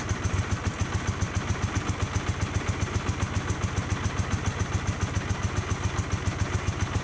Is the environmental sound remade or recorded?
recorded